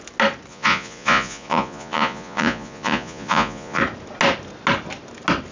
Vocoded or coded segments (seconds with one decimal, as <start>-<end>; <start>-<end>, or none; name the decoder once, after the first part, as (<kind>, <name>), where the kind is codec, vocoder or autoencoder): 0.5-3.8 (vocoder, Vocos)